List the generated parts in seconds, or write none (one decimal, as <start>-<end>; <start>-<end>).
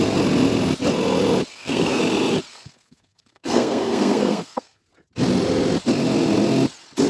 1.5-2.0; 2.5-4.8